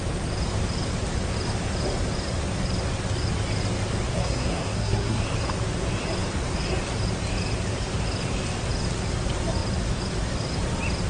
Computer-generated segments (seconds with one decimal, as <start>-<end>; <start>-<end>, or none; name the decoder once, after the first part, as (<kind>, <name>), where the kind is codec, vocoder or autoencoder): 4.2-5.2 (codec, SNAC)